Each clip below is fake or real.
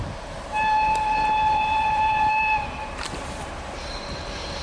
fake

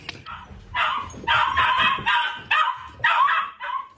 real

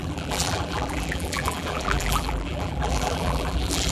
fake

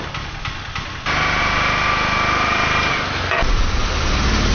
real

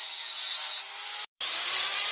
fake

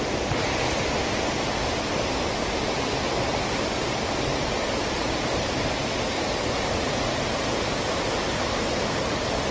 real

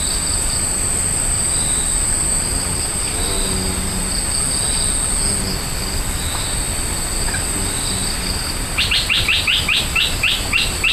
real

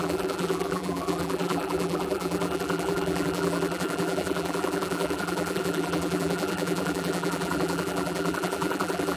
fake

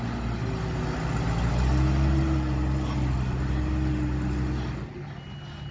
real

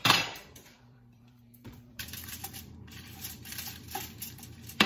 fake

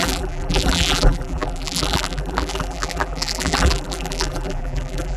fake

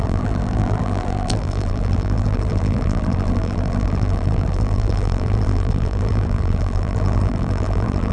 fake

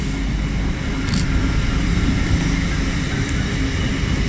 real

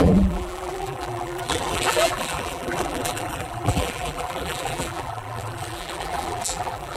fake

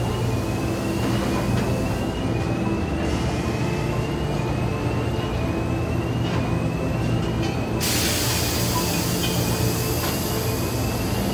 real